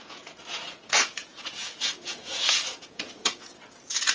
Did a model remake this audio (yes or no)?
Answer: yes